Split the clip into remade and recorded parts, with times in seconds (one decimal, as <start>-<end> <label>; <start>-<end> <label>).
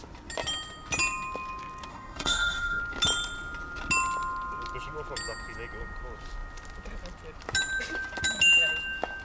0.0-1.9 recorded; 1.9-2.8 remade; 2.8-9.2 recorded